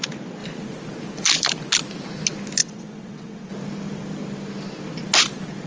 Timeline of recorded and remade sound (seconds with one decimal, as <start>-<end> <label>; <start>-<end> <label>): 0.0-2.6 recorded; 2.6-3.5 remade; 3.5-5.7 recorded